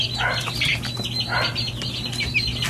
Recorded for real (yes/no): yes